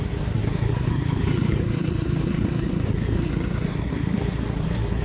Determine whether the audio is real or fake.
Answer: fake